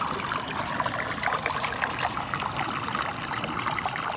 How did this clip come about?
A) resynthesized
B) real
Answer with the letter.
B